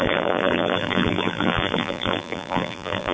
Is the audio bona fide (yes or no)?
no